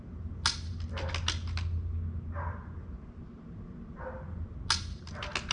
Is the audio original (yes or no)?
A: yes